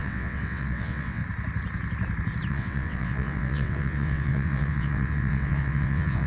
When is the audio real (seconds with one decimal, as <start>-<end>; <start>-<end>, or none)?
1.2-2.5